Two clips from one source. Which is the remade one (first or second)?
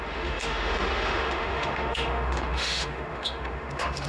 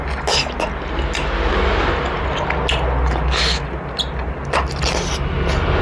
first